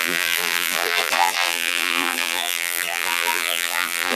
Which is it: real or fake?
fake